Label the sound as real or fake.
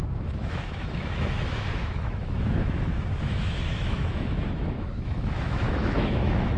fake